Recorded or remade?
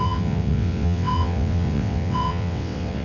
remade